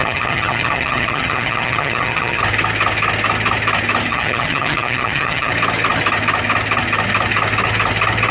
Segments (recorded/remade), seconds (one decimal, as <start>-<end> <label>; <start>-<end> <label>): 0.0-2.4 remade; 2.4-4.1 recorded; 4.1-5.5 remade; 5.5-8.3 recorded